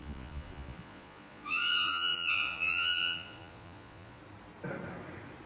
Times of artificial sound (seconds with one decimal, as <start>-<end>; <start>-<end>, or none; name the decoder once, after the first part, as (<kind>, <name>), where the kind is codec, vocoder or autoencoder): 0.0-4.2 (vocoder, Vocos)